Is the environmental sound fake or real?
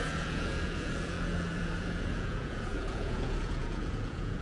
fake